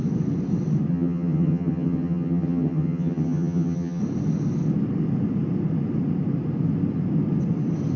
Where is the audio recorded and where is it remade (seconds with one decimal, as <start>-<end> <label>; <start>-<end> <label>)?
0.0-0.9 recorded; 0.9-4.0 remade; 4.0-8.0 recorded